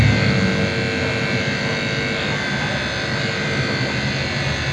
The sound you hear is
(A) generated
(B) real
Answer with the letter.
B